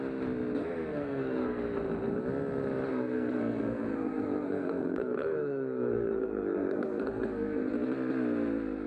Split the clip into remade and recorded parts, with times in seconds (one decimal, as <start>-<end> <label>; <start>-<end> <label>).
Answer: 0.0-0.6 recorded; 0.6-1.6 remade; 1.6-2.9 recorded; 2.9-7.7 remade; 7.7-8.9 recorded